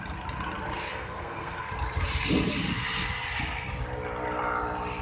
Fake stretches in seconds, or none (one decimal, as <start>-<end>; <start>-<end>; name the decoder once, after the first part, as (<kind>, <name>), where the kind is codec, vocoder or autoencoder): 0.9-1.7 (codec, SNAC)